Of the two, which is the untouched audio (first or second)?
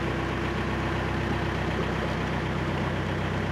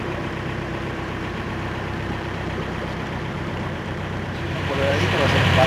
first